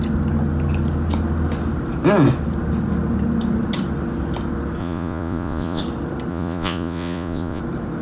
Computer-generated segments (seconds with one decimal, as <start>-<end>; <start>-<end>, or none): 4.8-5.8; 6.3-7.6